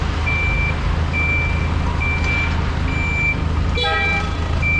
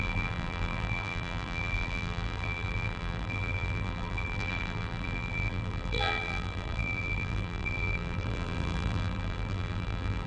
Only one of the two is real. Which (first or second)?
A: first